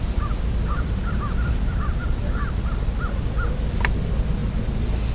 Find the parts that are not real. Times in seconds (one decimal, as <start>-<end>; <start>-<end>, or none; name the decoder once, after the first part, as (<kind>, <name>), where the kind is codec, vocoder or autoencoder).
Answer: none